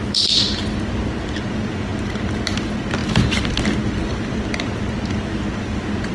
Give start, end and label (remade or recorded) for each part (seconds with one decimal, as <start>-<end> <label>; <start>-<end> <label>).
0.0-6.1 recorded